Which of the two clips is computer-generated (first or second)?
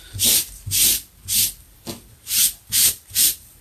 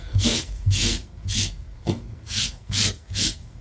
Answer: second